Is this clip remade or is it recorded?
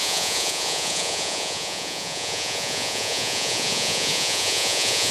remade